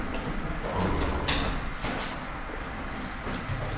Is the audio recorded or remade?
recorded